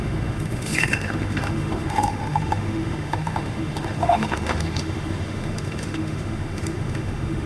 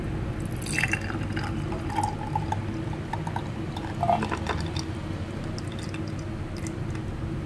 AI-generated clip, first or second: first